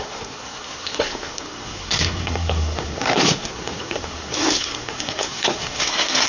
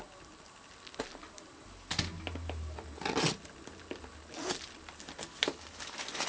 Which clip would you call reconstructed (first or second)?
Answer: first